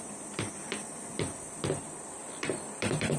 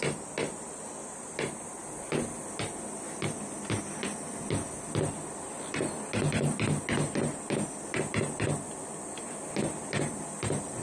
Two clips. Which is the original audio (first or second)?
second